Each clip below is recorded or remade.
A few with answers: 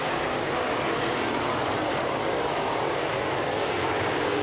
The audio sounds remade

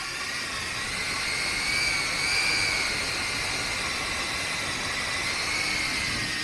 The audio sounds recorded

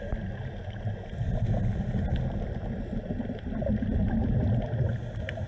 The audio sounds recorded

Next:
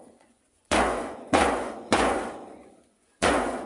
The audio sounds remade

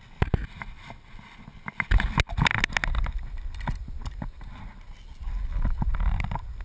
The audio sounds recorded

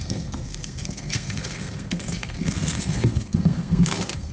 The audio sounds remade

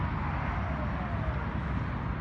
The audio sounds recorded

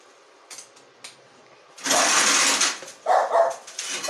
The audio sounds recorded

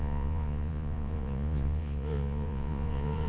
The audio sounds remade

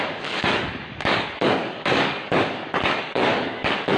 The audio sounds remade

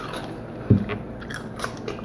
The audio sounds recorded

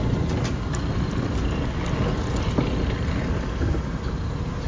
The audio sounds recorded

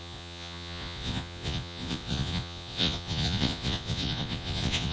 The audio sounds remade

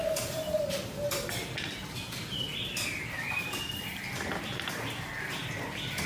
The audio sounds remade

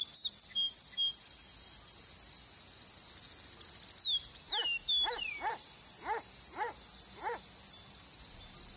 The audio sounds recorded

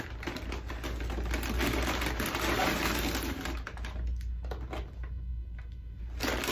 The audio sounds recorded